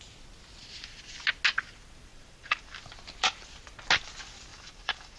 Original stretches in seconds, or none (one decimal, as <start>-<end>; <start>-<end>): 0.0-2.1; 2.8-4.5